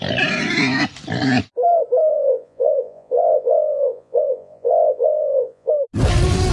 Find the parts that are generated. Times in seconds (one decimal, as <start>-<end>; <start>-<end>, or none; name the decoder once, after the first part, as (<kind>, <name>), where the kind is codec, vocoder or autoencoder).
2.1-5.7 (vocoder, Vocos)